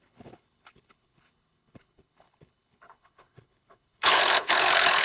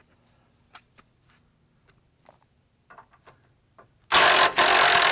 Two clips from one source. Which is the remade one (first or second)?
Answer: first